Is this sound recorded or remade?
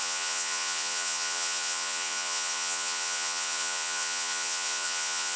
remade